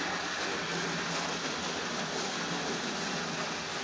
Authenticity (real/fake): real